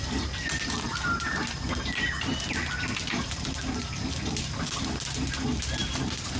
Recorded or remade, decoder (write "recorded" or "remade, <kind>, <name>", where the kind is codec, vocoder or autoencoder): recorded